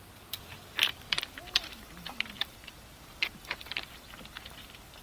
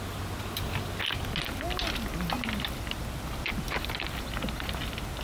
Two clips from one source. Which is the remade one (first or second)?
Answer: first